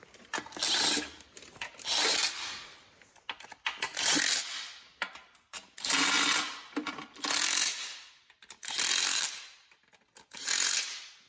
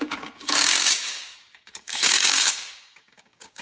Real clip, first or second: first